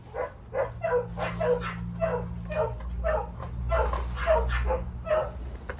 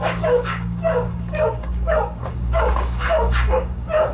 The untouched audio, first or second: first